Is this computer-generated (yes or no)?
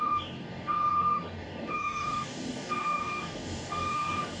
yes